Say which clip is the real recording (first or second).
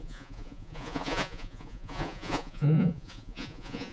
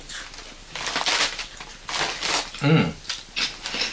second